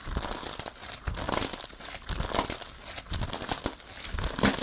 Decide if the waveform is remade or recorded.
recorded